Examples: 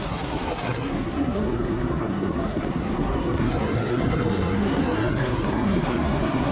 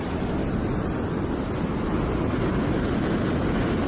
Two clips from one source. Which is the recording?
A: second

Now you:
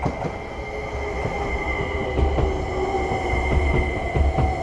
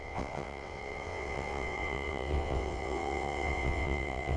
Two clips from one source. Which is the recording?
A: first